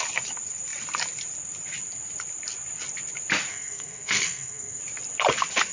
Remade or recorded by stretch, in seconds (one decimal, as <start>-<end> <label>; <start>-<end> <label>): 0.0-3.5 recorded; 3.5-4.8 remade; 4.8-5.7 recorded